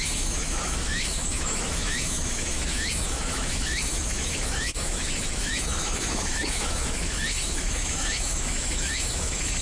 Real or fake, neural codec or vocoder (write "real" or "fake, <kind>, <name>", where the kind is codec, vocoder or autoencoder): fake, autoencoder, DAC-VAE